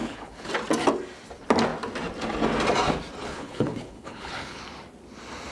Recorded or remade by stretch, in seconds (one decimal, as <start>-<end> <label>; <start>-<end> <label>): 0.0-0.5 remade; 0.5-3.2 recorded; 3.2-4.6 remade; 4.6-5.5 recorded